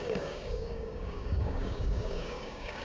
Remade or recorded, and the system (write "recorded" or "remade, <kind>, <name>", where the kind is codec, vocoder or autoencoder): remade, codec, DAC